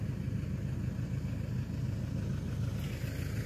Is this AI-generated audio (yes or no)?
no